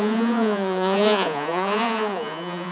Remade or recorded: remade